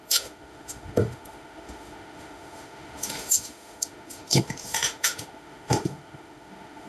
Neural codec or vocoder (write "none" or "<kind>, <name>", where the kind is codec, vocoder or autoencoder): autoencoder, DAC-VAE